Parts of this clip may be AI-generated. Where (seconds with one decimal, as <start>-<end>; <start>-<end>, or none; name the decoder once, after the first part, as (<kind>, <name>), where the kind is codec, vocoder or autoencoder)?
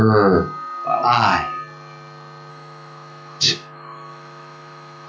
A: 2.5-5.1 (autoencoder, DAC-VAE)